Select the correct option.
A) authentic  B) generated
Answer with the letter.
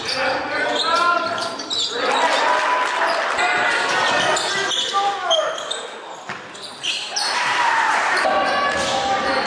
A